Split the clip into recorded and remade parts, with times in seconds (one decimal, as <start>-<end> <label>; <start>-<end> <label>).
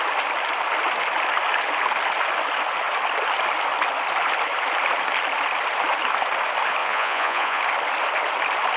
0.0-6.8 recorded; 6.8-7.6 remade; 7.6-8.8 recorded